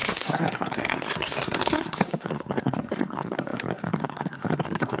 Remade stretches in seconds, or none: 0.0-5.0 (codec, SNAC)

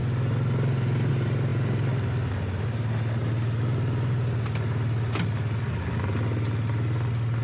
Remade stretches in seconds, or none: none

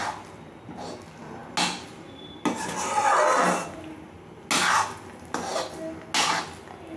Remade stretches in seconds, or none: none

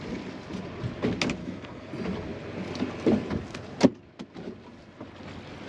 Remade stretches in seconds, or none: 1.4-1.9 (codec, SNAC)

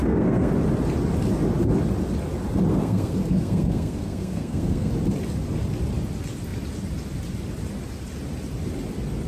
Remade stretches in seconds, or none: 0.0-0.5 (codec, SNAC); 2.7-4.9

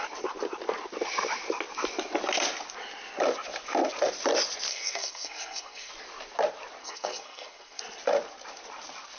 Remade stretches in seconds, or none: 4.7-5.9 (codec, SNAC); 6.8-7.8

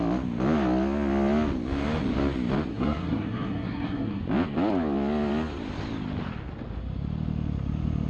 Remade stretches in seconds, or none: 2.7-4.2 (codec, SNAC)